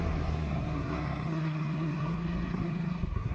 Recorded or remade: remade